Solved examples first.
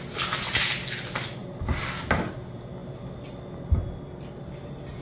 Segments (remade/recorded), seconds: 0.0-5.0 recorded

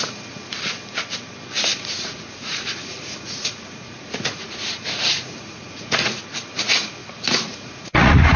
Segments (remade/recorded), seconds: 0.0-1.7 recorded; 1.7-6.2 remade; 6.2-7.0 recorded; 7.0-8.4 remade

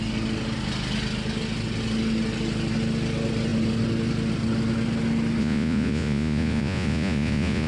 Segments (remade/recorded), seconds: 0.0-5.4 recorded; 5.4-7.7 remade

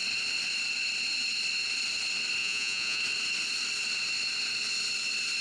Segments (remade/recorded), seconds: 0.0-2.4 recorded; 2.4-3.0 remade; 3.0-5.4 recorded

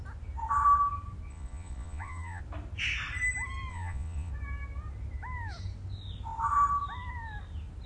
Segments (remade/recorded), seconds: 0.0-1.3 recorded; 1.3-2.4 remade; 2.4-3.7 recorded; 3.7-4.3 remade; 4.3-7.9 recorded

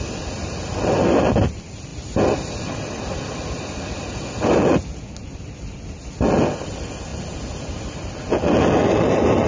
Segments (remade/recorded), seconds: 0.0-9.5 recorded

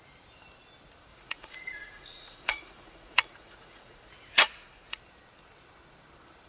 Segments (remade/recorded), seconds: 0.0-1.1 recorded; 1.1-5.0 remade; 5.0-6.5 recorded

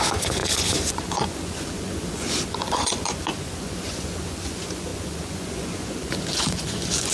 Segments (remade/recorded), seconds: 0.0-7.1 remade